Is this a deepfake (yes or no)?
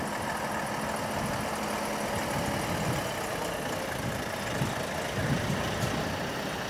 no